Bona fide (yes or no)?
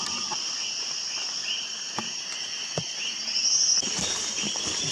yes